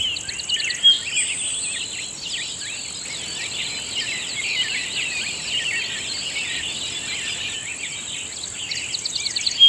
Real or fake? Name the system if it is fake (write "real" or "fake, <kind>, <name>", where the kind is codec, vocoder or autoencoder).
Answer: real